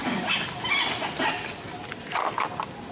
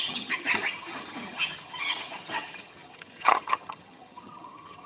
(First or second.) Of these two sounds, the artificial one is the second